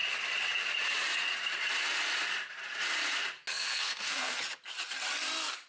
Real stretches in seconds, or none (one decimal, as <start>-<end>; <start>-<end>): 0.0-3.5; 4.4-5.7